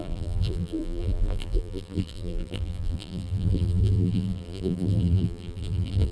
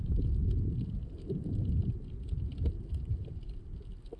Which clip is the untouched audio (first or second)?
second